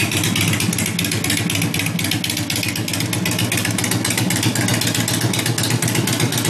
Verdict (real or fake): real